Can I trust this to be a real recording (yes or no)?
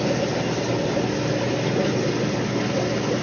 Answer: yes